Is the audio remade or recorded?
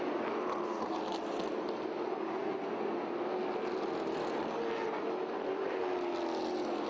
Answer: recorded